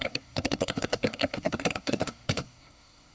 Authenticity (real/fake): fake